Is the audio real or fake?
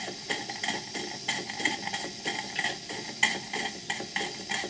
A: real